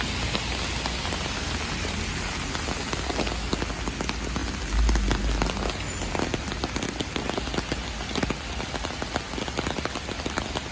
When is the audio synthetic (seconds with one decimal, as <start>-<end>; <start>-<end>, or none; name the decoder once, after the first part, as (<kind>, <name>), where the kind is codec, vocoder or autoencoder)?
none